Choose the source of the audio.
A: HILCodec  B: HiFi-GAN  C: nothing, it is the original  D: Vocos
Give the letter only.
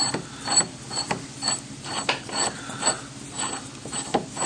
C